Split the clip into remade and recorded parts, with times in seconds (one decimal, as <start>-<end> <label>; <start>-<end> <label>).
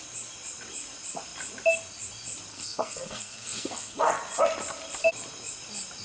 0.0-2.5 recorded; 2.5-4.2 remade; 4.2-6.0 recorded